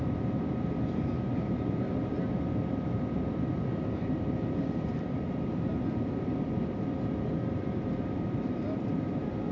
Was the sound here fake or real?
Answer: fake